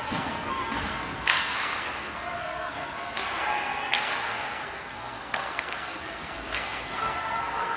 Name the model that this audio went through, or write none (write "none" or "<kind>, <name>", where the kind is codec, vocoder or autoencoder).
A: codec, SNAC